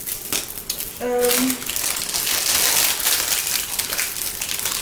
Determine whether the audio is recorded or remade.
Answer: recorded